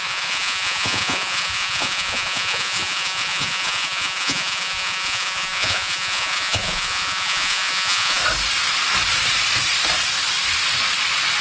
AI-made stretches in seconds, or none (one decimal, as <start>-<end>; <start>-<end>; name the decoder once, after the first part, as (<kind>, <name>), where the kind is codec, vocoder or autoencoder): 0.0-8.2 (vocoder, Vocos)